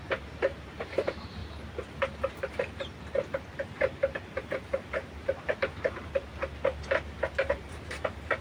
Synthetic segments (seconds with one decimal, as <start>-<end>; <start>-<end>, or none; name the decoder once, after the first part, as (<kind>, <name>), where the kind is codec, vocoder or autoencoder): 0.0-1.4 (vocoder, BigVGAN v2); 2.3-6.3; 7.5-8.4